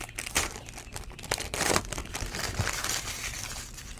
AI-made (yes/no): yes